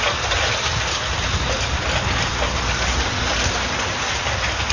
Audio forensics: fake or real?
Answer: real